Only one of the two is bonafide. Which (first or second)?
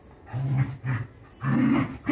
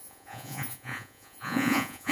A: first